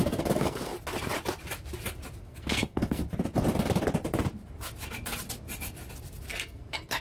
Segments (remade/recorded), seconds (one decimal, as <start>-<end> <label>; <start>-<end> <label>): 0.0-0.7 remade; 0.7-2.2 recorded; 2.2-3.0 remade; 3.0-6.3 recorded; 6.3-7.0 remade